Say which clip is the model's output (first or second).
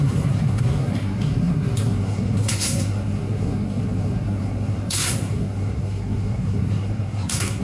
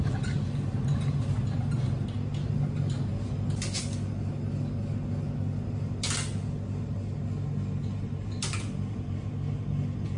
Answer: first